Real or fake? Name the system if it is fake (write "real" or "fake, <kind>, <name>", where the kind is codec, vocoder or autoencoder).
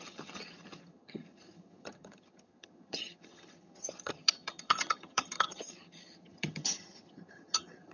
fake, vocoder, HiFi-GAN